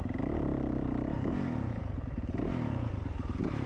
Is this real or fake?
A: fake